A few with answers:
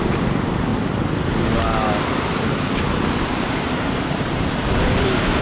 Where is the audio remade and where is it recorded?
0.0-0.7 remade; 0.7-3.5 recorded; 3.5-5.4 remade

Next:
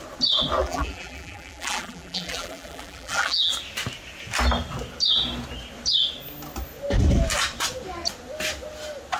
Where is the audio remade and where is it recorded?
0.0-0.6 recorded; 0.6-3.5 remade; 3.5-9.2 recorded